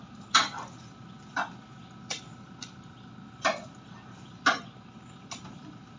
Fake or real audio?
real